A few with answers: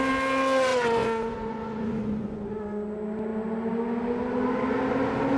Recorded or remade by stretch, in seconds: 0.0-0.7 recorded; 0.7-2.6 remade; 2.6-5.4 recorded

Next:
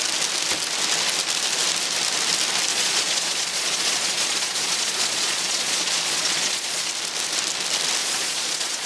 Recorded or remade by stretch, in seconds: 0.0-2.7 recorded; 2.7-6.9 remade; 6.9-8.0 recorded; 8.0-8.9 remade

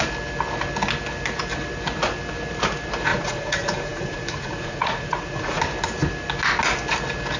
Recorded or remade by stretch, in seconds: 0.0-3.1 recorded; 3.1-5.6 remade; 5.6-7.4 recorded

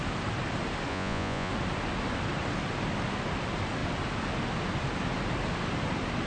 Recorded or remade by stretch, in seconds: 0.0-0.9 recorded; 0.9-1.5 remade; 1.5-6.3 recorded

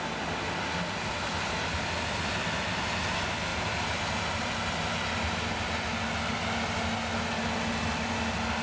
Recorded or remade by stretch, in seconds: 0.0-8.6 recorded

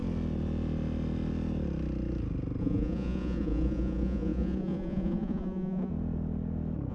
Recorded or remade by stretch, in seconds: 0.0-2.6 recorded; 2.6-5.9 remade; 5.9-6.9 recorded

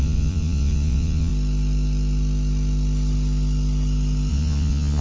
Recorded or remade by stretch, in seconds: 0.0-1.3 remade; 1.3-4.3 recorded; 4.3-5.0 remade

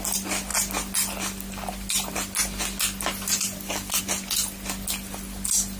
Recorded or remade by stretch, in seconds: 0.0-5.8 recorded